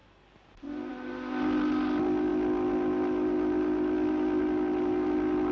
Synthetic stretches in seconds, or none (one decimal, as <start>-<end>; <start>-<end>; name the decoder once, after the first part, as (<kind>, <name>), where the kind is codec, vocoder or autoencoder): none